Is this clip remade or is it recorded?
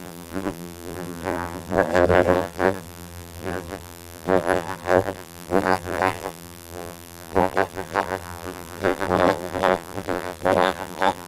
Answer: remade